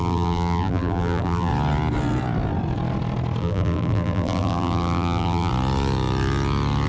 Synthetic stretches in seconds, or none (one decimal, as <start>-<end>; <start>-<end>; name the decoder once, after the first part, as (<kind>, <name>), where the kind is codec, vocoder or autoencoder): 0.0-1.5 (vocoder, BigVGAN v2); 3.4-5.5